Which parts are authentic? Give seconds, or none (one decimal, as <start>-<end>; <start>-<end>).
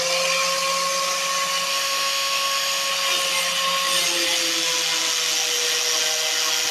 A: 0.0-1.7; 2.9-6.7